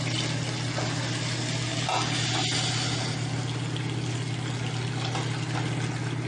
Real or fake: real